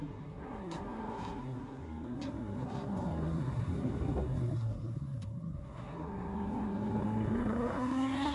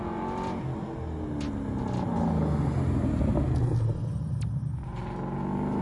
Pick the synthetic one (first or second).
first